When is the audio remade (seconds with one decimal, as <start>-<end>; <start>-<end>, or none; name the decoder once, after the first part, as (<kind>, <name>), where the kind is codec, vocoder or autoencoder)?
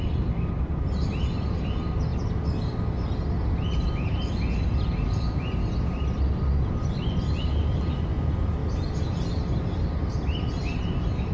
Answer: none